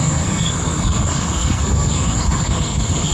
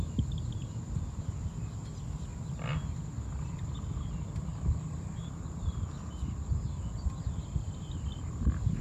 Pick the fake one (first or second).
first